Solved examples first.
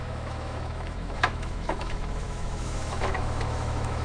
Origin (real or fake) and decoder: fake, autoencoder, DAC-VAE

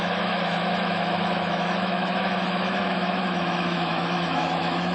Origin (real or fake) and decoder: fake, autoencoder, DAC-VAE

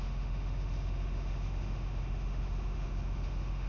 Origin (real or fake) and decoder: fake, autoencoder, DAC-VAE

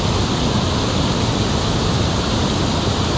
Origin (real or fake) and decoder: real